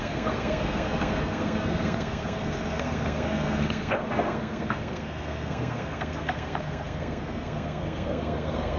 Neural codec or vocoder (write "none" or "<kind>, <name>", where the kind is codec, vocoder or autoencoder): codec, SNAC